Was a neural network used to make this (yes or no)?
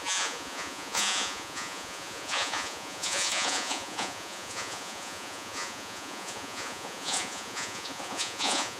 yes